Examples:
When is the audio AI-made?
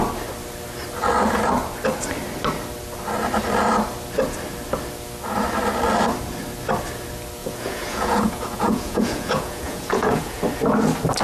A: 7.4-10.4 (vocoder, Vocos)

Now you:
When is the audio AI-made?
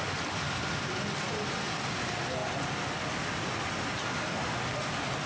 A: none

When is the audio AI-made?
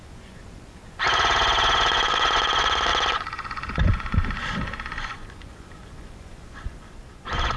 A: 0.0-7.6 (vocoder, Vocos)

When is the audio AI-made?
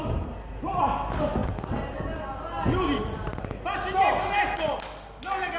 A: none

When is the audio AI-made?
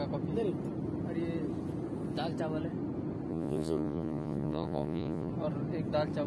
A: 3.3-5.3 (vocoder, Vocos)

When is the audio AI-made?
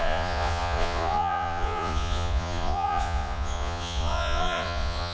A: 0.0-5.1 (vocoder, Vocos)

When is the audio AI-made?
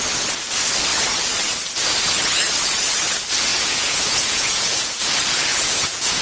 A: 3.5-5.1 (vocoder, Vocos); 5.5-6.2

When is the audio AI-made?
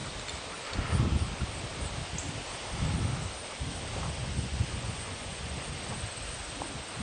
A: 4.2-5.6 (vocoder, Vocos)